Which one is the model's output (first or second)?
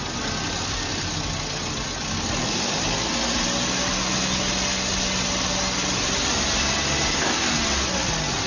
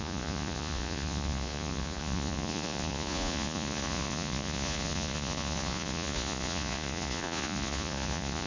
second